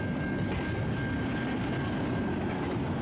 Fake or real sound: real